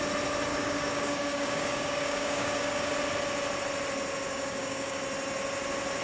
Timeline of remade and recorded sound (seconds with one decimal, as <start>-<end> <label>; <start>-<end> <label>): 0.0-0.5 recorded; 0.5-2.9 remade; 2.9-4.3 recorded; 4.3-5.0 remade; 5.0-6.0 recorded